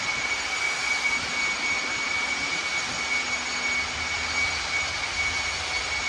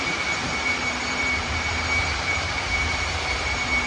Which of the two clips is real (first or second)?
first